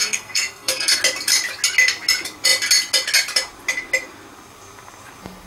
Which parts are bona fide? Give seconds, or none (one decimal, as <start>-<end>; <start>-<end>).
1.0-5.5